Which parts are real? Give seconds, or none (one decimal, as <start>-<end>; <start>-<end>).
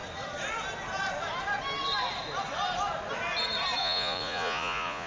0.0-3.8